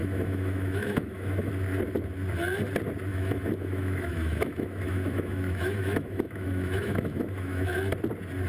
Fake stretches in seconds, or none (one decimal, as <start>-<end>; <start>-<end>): 0.0-1.5; 3.1-7.8